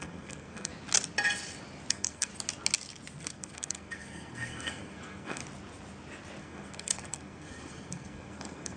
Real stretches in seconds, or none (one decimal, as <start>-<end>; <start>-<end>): 0.7-1.9; 2.3-3.2; 5.4-6.4